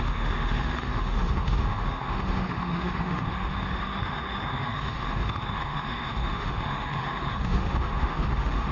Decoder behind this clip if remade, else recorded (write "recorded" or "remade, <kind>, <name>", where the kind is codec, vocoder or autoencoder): remade, autoencoder, DAC-VAE